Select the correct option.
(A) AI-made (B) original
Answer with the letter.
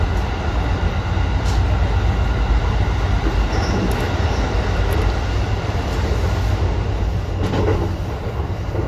B